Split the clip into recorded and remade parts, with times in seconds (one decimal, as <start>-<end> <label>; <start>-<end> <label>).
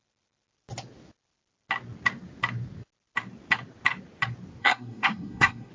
0.0-4.6 recorded; 4.6-5.7 remade